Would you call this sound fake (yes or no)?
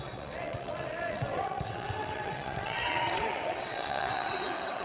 yes